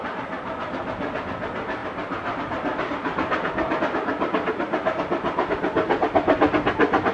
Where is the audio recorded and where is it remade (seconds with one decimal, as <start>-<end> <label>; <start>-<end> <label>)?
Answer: 0.0-1.8 recorded; 1.8-3.8 remade; 3.8-7.1 recorded

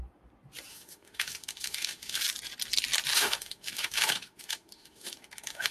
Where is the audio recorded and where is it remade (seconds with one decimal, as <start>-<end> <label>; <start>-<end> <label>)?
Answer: 0.0-0.7 recorded; 0.7-2.2 remade; 2.2-3.1 recorded; 3.1-5.7 remade

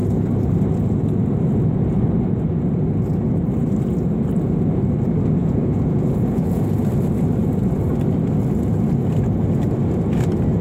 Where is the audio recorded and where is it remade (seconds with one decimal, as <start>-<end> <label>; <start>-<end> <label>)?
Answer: 0.0-5.4 recorded; 5.4-6.6 remade; 6.6-10.6 recorded

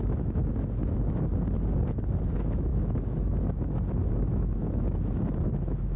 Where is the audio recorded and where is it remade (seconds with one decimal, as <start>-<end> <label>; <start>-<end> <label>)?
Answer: 0.0-1.3 remade; 1.3-2.3 recorded; 2.3-6.0 remade

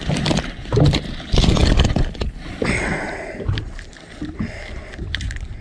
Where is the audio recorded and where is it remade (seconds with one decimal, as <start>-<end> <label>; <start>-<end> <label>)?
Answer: 0.0-5.6 remade

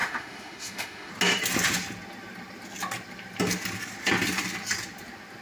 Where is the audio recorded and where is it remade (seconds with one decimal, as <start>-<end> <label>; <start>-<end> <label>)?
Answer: 0.0-1.1 remade; 1.1-5.4 recorded

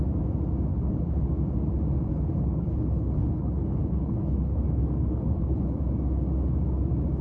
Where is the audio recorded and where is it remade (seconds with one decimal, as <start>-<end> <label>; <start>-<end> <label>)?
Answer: 0.0-0.7 recorded; 0.7-1.3 remade; 1.3-2.1 recorded; 2.1-5.8 remade; 5.8-7.2 recorded